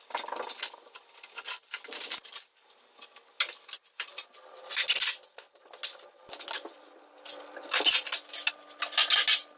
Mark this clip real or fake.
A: real